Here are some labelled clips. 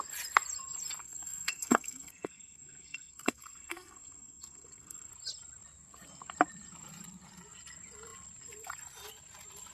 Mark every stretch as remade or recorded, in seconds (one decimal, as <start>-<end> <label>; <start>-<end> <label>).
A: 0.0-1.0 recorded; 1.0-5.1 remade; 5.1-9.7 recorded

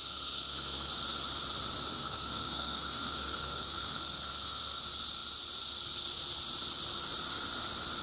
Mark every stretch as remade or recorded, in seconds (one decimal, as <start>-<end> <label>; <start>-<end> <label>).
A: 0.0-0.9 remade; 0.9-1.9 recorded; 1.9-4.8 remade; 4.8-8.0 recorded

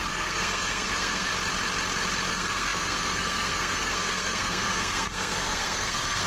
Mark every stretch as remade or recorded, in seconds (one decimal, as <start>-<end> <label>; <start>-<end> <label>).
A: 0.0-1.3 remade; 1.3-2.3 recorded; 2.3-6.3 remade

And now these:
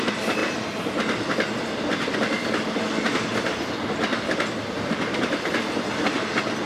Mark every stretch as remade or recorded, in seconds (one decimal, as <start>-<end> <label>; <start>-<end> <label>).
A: 0.0-6.7 recorded

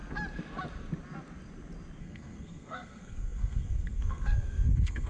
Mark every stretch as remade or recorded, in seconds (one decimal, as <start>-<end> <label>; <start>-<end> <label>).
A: 0.0-2.0 recorded; 2.0-5.1 remade

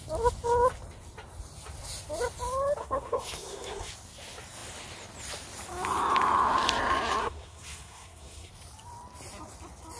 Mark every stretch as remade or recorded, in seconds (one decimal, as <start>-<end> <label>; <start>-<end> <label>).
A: 0.0-2.8 recorded; 2.8-3.9 remade; 3.9-7.2 recorded; 7.2-8.5 remade; 8.5-10.0 recorded